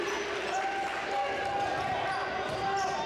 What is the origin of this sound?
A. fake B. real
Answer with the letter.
B